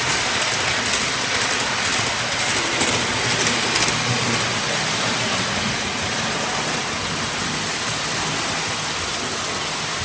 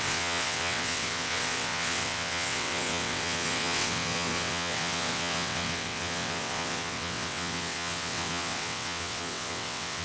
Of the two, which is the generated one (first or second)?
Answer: second